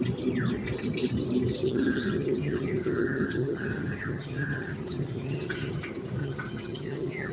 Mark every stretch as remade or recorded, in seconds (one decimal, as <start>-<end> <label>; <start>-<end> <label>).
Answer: 0.0-1.6 recorded; 1.6-5.7 remade; 5.7-6.2 recorded; 6.2-7.3 remade